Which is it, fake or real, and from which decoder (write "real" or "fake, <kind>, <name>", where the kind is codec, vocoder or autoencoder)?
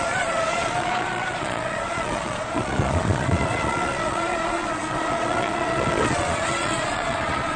fake, vocoder, Vocos